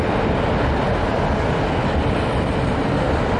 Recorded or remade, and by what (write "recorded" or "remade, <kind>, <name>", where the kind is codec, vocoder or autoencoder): recorded